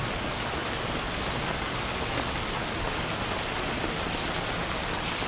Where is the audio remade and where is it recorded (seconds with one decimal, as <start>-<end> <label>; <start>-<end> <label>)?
0.0-5.3 recorded